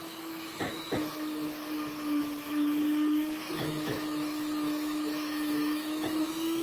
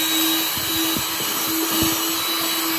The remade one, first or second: first